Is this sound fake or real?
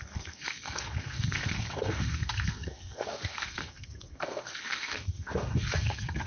fake